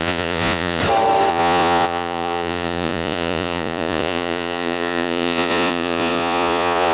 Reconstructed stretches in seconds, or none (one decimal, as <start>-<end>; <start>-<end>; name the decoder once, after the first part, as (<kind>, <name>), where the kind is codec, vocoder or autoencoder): 0.0-0.8 (vocoder, Vocos); 1.3-6.9